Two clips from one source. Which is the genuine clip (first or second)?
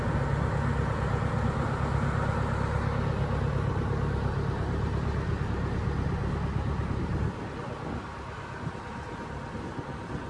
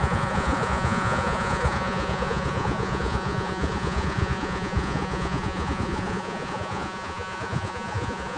first